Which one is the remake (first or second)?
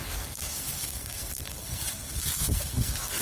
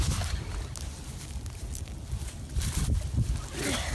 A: first